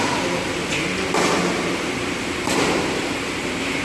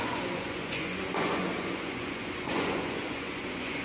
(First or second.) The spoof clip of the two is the second